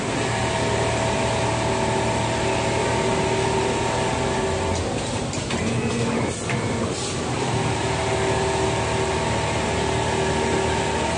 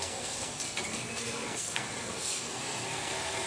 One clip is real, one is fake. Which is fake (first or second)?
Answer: second